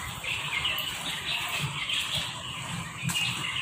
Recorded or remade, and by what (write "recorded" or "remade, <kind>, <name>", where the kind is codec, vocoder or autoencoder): recorded